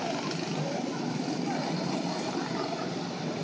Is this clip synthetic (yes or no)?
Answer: no